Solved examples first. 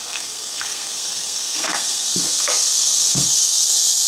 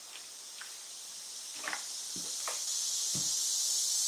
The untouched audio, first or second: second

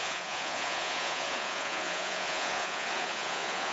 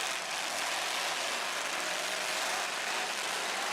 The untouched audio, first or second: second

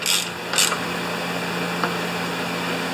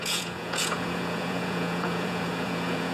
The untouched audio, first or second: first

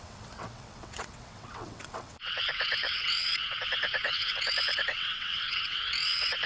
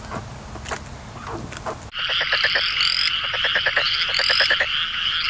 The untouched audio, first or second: second